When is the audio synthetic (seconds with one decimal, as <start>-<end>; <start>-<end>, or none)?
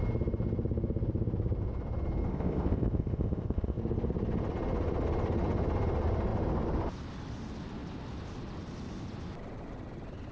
2.3-3.8